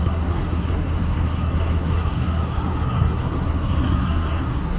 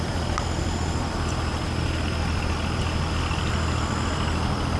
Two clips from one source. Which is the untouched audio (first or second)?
second